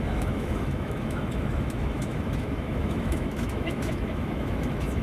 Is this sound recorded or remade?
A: remade